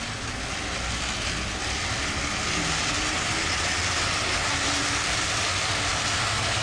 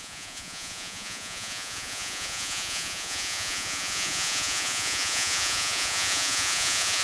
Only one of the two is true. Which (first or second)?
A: first